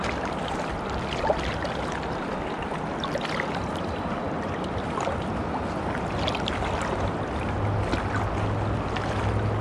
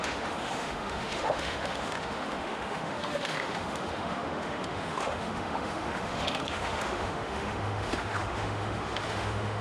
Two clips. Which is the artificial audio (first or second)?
second